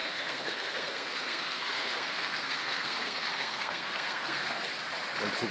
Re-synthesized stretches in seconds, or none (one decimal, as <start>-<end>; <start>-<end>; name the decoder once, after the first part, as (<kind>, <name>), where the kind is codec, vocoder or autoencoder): 0.0-4.7 (codec, SNAC)